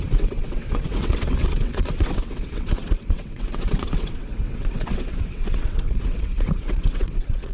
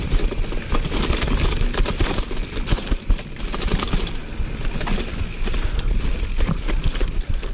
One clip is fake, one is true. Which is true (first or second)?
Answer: second